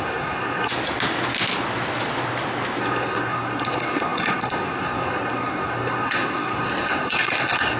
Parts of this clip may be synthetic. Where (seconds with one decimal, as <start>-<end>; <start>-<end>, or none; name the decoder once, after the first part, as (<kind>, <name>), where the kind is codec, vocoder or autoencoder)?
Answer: 0.0-0.7 (codec, SNAC); 2.8-7.8